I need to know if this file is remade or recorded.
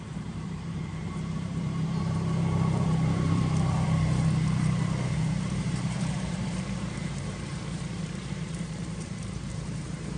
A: remade